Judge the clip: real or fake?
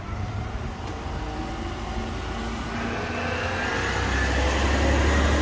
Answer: real